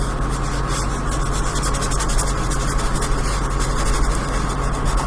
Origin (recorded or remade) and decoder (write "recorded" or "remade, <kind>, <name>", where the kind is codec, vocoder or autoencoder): recorded